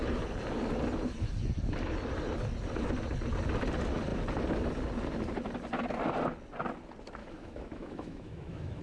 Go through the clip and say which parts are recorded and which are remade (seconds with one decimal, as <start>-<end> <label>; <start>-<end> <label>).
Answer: 0.0-7.2 recorded; 7.2-8.8 remade